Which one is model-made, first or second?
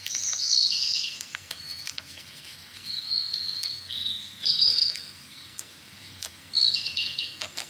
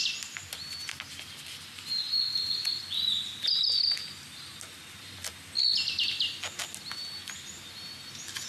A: first